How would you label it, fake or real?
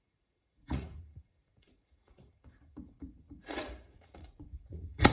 fake